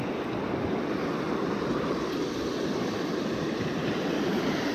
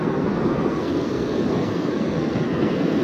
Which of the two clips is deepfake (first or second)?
second